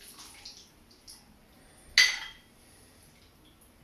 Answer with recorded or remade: recorded